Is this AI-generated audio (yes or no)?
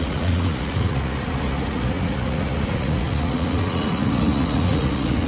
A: yes